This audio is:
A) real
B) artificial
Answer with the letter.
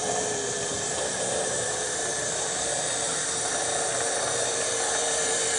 A